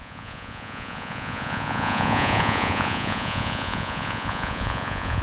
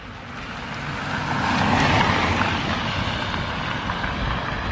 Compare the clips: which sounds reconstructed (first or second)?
first